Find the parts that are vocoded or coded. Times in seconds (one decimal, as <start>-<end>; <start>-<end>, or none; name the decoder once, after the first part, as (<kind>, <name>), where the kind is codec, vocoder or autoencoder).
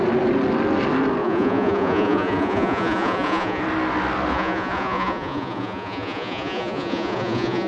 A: 1.2-3.6 (vocoder, Vocos); 4.3-7.7